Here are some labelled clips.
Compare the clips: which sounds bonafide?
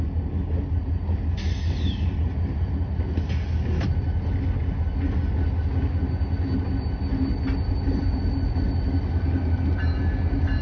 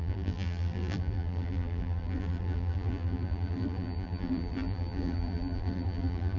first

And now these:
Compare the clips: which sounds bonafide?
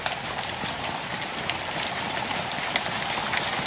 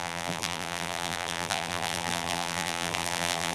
first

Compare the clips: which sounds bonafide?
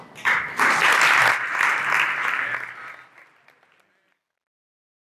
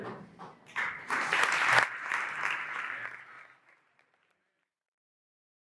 first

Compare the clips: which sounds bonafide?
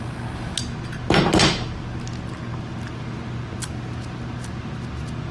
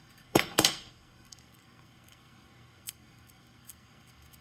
first